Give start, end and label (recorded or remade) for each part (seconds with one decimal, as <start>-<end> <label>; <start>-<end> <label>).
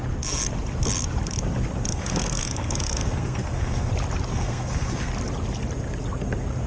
0.0-1.9 recorded; 1.9-3.9 remade; 3.9-4.3 recorded; 4.3-5.1 remade; 5.1-6.7 recorded